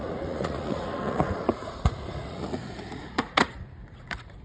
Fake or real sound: fake